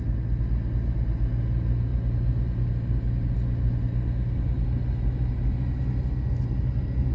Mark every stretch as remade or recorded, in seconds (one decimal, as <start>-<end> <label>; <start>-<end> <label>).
0.0-7.1 recorded